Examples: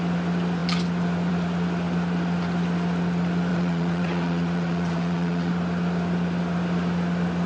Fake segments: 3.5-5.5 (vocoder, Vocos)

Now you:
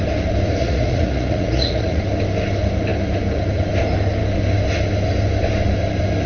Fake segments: 0.6-2.0 (vocoder, Vocos)

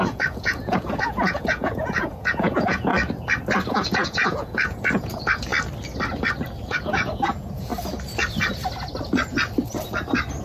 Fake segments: 0.0-2.9 (vocoder, Vocos); 3.7-5.5; 6.6-7.7

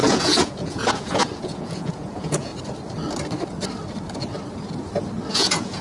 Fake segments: 0.0-2.5 (vocoder, Vocos); 5.3-5.8

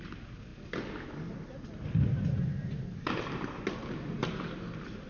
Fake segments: none

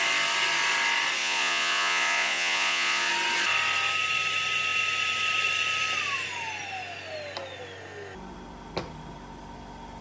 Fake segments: 1.2-3.1 (vocoder, Vocos)